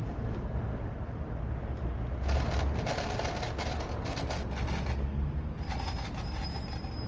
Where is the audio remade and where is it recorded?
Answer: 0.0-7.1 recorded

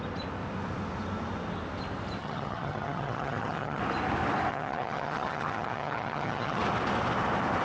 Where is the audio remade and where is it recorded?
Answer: 0.0-2.2 recorded; 2.2-3.8 remade; 3.8-4.5 recorded; 4.5-6.6 remade; 6.6-7.6 recorded

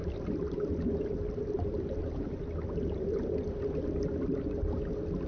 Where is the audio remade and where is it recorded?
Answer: 0.0-5.3 recorded